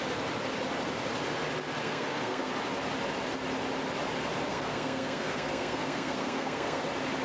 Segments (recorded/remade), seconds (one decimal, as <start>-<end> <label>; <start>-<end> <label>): 0.0-1.8 recorded; 1.8-2.5 remade; 2.5-4.5 recorded; 4.5-6.8 remade; 6.8-7.2 recorded